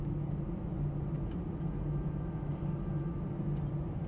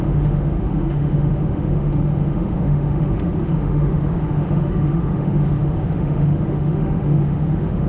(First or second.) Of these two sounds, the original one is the first